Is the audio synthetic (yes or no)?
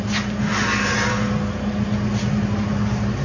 no